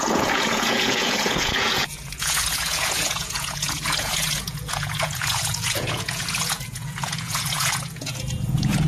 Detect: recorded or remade remade